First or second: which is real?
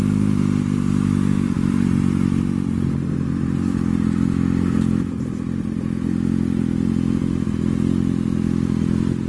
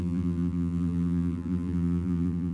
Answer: first